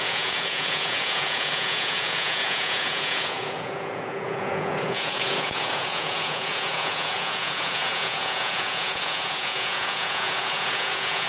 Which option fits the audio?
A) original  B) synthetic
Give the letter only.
B